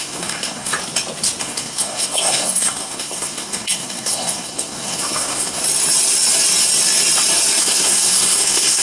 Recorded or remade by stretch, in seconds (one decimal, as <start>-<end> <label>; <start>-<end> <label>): 0.0-0.7 remade; 0.7-1.4 recorded; 1.4-5.6 remade; 5.6-7.6 recorded; 7.6-8.8 remade